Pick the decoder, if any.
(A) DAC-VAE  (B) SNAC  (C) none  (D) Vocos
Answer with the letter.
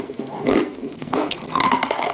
B